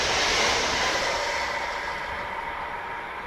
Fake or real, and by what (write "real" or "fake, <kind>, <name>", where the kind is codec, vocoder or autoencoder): real